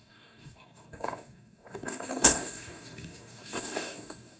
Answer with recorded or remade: remade